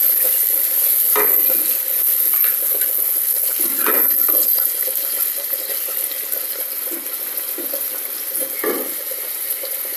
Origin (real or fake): real